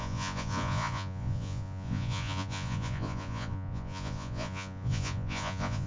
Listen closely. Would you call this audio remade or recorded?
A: remade